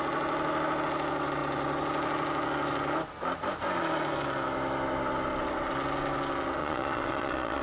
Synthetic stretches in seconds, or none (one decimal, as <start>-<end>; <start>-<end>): 6.6-7.6